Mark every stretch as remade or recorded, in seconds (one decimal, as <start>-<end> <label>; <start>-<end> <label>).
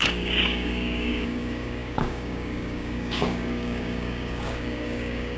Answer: 0.0-5.4 remade